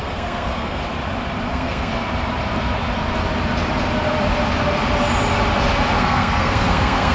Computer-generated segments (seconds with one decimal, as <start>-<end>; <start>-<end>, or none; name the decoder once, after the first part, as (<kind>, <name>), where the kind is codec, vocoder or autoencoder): 0.0-0.8 (codec, SNAC); 1.5-1.9; 6.0-7.1